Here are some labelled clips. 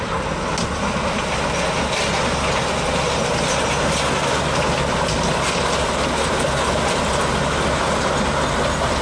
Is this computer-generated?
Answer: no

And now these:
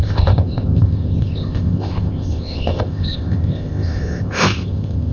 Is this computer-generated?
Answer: yes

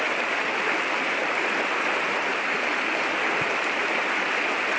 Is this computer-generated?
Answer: no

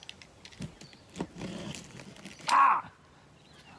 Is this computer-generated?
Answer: no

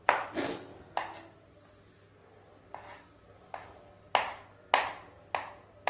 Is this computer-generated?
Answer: no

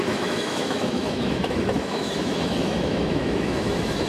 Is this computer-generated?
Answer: yes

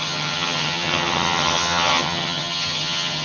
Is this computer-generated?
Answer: yes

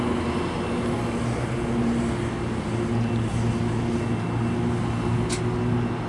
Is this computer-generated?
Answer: no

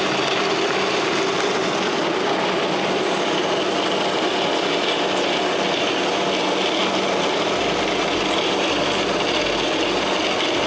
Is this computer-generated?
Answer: no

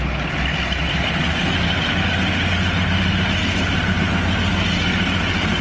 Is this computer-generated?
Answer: no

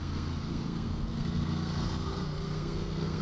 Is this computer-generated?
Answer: yes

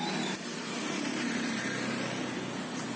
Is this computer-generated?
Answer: no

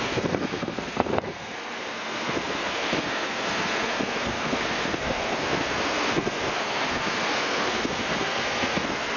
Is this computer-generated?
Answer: yes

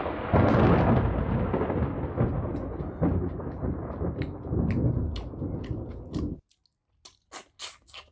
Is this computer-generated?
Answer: no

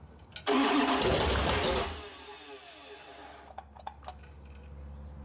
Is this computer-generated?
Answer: no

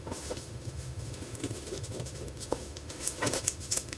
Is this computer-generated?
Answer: yes